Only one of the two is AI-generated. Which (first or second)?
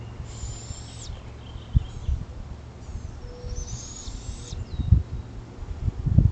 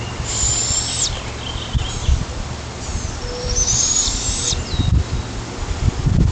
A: second